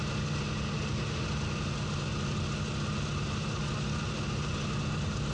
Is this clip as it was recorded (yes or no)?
yes